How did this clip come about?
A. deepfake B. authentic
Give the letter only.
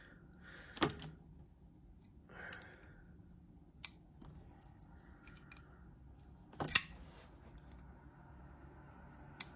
B